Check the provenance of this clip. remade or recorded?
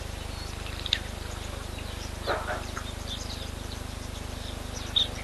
recorded